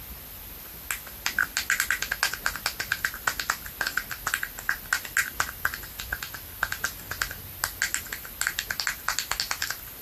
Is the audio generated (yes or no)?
no